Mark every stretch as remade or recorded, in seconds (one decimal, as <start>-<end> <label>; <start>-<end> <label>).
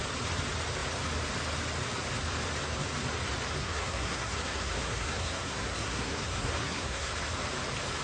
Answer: 0.0-3.6 recorded; 3.6-7.1 remade; 7.1-8.0 recorded